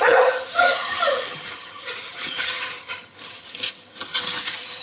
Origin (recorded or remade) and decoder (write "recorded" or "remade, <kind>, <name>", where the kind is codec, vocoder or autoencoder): remade, vocoder, HiFi-GAN